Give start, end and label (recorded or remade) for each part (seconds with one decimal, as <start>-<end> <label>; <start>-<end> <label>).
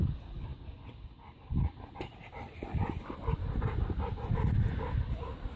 0.0-5.6 recorded